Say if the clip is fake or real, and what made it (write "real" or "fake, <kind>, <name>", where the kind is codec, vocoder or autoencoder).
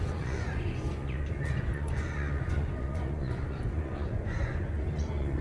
fake, vocoder, Vocos